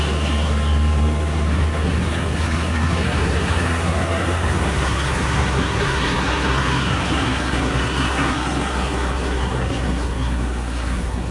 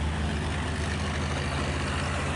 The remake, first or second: first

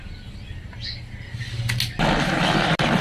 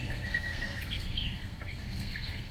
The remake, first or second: second